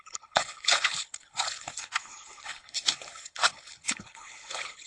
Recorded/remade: remade